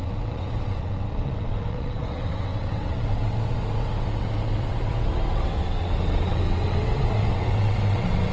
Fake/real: fake